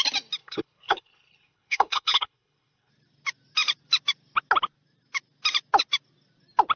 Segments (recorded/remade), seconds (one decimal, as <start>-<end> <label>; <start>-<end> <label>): 0.0-0.4 recorded; 0.4-2.9 remade; 2.9-6.8 recorded